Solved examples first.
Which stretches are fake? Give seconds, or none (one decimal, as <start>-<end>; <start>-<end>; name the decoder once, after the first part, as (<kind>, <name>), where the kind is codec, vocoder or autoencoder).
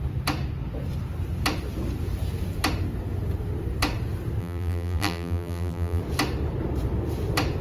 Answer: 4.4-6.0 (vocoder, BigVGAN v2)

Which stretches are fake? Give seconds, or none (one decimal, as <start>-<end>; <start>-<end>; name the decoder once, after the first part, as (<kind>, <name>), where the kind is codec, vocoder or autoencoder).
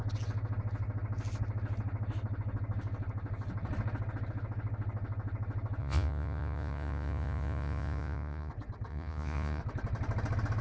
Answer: 5.8-8.5 (vocoder, Vocos); 8.9-9.6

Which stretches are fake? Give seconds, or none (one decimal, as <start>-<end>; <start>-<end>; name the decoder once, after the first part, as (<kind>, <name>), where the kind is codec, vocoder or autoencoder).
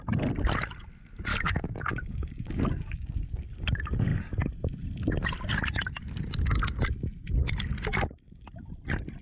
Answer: 1.3-3.4 (codec, DAC)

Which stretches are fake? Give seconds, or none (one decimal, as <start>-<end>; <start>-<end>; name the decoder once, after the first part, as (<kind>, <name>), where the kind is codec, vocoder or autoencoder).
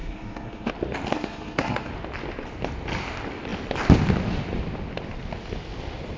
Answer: 0.0-0.7 (codec, SNAC); 1.1-1.9